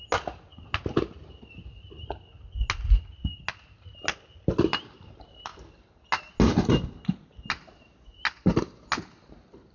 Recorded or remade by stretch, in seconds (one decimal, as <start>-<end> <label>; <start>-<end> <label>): 0.0-9.7 recorded